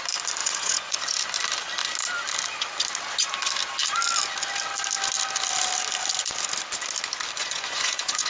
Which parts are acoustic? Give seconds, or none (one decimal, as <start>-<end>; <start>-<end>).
0.0-0.4; 1.0-7.4